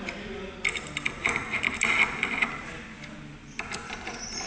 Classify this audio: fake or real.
real